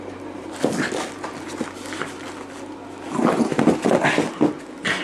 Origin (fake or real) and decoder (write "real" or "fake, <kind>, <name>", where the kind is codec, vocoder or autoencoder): real